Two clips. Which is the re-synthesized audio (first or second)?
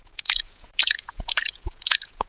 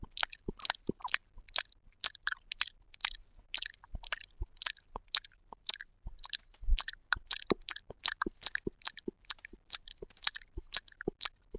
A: first